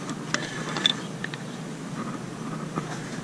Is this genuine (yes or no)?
yes